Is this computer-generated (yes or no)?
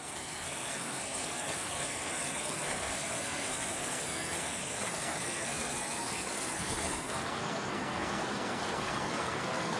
yes